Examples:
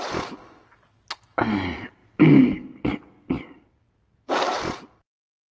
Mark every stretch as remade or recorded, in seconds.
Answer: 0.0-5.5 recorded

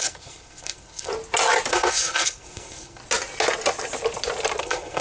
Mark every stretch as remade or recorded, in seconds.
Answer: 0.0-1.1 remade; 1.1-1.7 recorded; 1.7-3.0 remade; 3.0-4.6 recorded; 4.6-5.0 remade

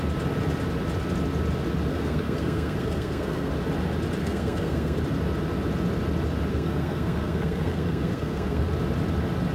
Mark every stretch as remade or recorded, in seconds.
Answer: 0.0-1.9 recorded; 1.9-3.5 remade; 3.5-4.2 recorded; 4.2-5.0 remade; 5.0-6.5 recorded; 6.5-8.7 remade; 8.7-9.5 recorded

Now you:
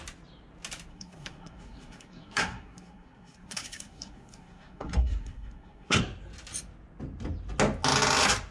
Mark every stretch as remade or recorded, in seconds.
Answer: 0.0-0.9 recorded; 0.9-6.0 remade; 6.0-8.5 recorded